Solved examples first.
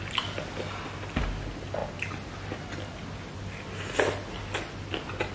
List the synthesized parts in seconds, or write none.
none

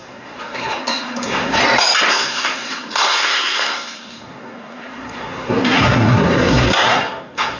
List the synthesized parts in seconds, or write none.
0.0-1.6 (codec, SNAC); 2.1-7.6

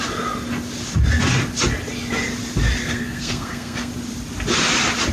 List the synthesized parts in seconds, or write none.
2.8-3.9 (codec, SNAC)

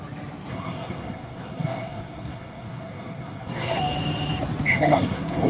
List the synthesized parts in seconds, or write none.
0.5-3.8 (codec, SNAC); 4.7-5.5

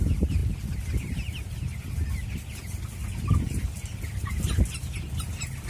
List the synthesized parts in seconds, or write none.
none

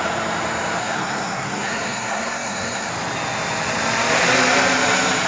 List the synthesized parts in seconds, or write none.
0.8-2.9 (codec, SNAC)